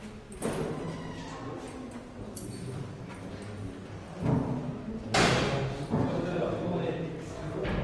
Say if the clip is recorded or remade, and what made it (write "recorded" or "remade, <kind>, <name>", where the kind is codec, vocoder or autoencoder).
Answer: recorded